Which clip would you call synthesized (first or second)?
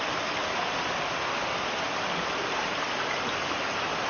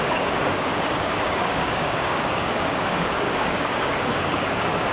second